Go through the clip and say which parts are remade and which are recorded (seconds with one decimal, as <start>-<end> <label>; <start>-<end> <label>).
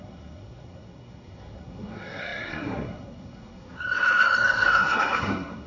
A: 0.0-5.7 remade